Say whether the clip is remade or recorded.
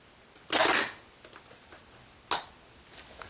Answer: recorded